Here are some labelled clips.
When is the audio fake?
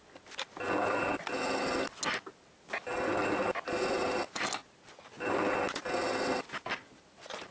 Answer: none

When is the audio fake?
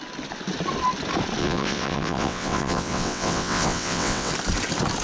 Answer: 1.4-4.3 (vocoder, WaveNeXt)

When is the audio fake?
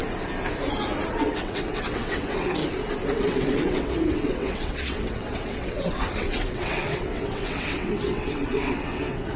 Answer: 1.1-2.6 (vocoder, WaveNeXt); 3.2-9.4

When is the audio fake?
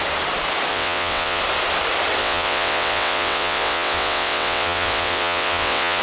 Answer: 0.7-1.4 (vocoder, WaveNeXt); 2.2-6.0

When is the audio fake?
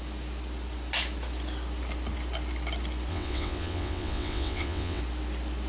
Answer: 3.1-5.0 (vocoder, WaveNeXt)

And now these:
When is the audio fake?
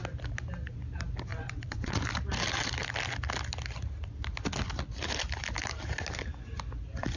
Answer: 1.3-2.0 (vocoder, WaveNeXt)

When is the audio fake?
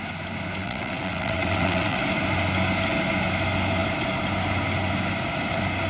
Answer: 0.6-2.0 (vocoder, WaveNeXt)